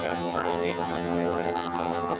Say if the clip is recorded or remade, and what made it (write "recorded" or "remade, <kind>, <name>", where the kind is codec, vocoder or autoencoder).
remade, vocoder, HiFi-GAN